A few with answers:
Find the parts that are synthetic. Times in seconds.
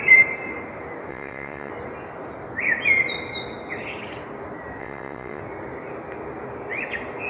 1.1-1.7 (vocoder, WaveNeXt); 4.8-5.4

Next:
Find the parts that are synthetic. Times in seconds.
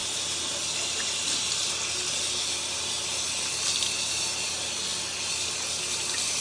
none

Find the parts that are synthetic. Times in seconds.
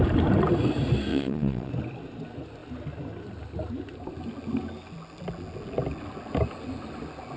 1.1-1.7 (vocoder, WaveNeXt)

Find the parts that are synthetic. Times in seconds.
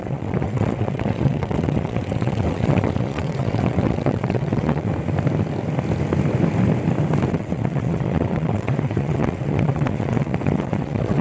0.0-4.9 (vocoder, WaveNeXt); 7.3-11.2